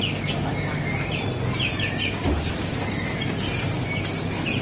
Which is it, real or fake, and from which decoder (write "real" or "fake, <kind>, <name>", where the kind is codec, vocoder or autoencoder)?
real